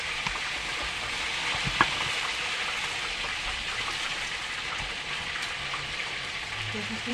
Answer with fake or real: real